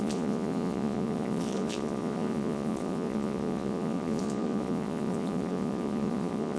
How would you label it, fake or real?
fake